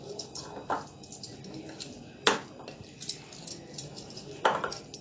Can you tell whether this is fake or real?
real